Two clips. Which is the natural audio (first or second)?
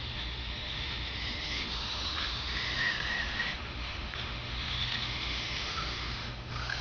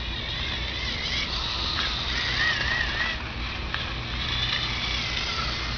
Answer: second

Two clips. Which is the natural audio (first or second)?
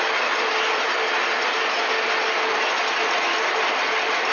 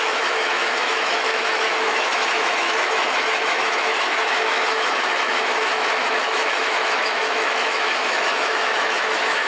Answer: first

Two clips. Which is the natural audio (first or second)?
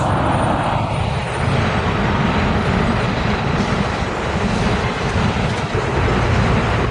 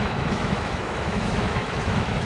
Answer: first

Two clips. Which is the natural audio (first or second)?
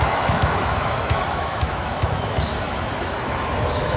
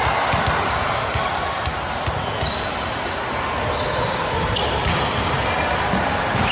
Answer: second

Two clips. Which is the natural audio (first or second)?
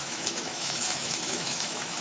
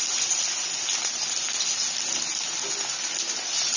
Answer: second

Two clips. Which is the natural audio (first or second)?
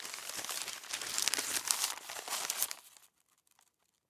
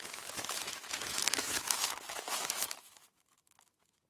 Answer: first